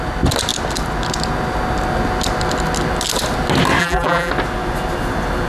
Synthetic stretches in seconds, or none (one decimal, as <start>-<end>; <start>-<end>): 3.8-4.3